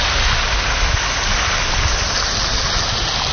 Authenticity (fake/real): real